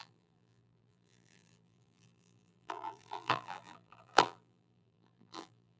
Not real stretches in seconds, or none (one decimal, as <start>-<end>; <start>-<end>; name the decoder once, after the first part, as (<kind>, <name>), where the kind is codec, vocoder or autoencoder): 0.0-5.8 (vocoder, BigVGAN v2)